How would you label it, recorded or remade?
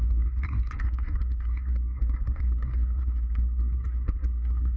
remade